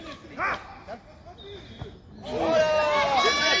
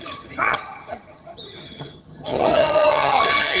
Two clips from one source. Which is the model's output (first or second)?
second